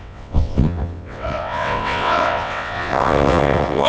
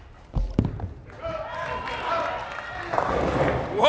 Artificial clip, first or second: first